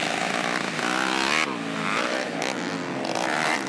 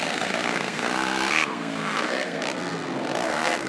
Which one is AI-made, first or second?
second